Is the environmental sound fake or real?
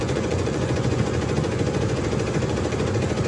fake